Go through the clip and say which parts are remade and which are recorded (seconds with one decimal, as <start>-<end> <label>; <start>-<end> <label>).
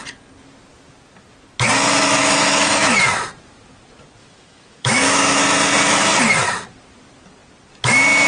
0.0-2.2 recorded; 2.2-2.9 remade; 2.9-4.2 recorded; 4.2-5.4 remade; 5.4-8.3 recorded